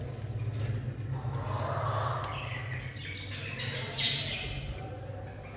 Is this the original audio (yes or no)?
yes